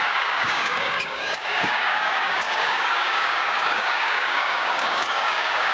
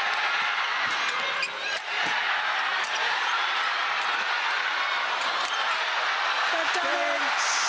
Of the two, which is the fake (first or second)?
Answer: first